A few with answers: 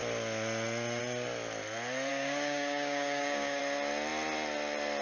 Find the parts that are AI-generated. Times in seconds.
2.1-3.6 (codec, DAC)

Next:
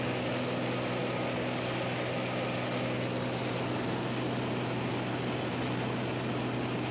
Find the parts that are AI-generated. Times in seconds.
none

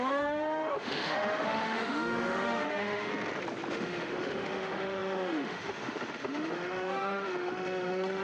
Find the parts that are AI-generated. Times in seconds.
0.0-3.1 (autoencoder, DAC-VAE); 3.7-8.2

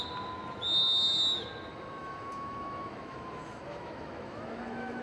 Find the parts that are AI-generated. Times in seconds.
1.7-5.0 (autoencoder, DAC-VAE)

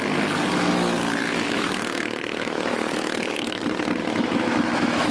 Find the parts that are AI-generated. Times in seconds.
1.2-3.6 (autoencoder, DAC-VAE); 4.0-5.1

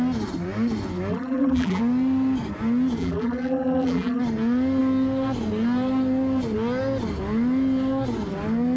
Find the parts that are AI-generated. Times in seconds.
1.1-1.8 (vocoder, BigVGAN v2); 3.0-4.2

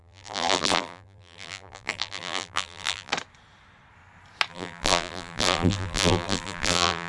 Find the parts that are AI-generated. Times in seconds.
0.0-3.1 (vocoder, BigVGAN v2); 4.5-7.1